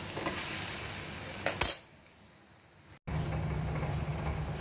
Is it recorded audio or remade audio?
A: recorded